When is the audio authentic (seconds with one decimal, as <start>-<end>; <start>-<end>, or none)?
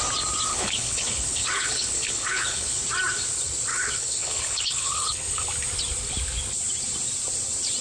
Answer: 0.0-0.5; 2.8-3.7; 5.5-7.8